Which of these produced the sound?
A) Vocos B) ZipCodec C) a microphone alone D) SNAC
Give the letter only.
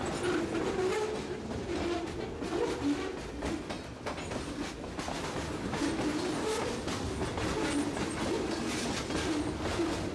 C